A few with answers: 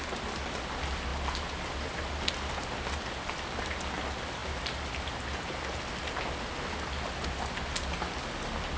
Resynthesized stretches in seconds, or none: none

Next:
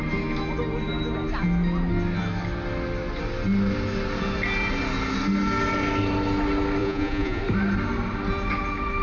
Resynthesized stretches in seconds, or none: 6.8-7.4